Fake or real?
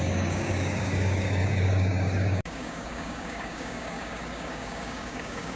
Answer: fake